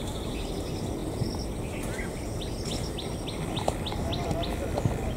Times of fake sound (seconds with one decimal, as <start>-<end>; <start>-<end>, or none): none